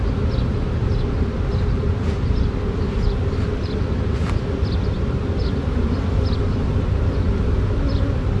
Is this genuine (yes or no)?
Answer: yes